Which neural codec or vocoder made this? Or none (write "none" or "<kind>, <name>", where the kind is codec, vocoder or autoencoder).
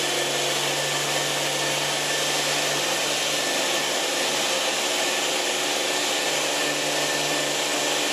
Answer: none